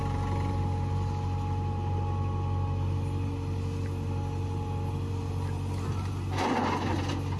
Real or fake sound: real